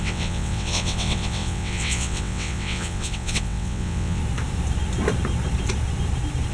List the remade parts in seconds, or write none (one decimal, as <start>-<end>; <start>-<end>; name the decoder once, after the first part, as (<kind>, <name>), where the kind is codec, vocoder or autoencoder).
0.0-4.2 (vocoder, WaveNeXt)